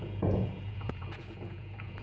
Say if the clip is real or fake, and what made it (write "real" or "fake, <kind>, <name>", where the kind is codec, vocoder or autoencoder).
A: fake, vocoder, Vocos